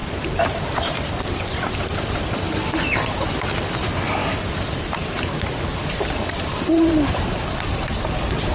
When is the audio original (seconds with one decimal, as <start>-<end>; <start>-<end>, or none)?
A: 0.9-4.2; 5.3-5.7; 7.5-8.5